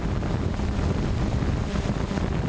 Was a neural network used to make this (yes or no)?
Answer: no